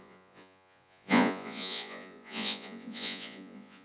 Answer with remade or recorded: remade